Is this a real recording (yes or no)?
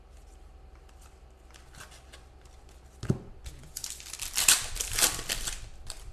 yes